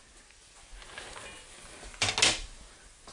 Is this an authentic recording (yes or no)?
yes